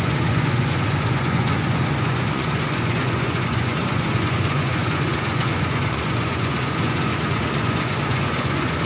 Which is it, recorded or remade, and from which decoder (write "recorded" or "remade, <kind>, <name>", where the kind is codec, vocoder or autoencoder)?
remade, vocoder, Vocos